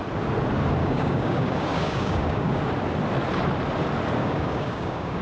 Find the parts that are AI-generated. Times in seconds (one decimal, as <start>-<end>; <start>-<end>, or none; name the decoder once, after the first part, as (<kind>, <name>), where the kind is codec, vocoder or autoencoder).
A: 0.8-2.5 (codec, DAC); 4.2-5.2